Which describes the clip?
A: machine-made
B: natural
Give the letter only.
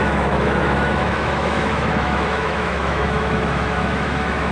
A